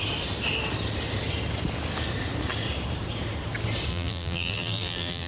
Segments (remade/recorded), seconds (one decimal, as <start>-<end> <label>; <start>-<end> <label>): 0.0-3.9 recorded; 3.9-5.3 remade